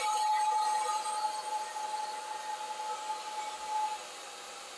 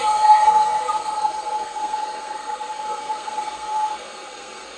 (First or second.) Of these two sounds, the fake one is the second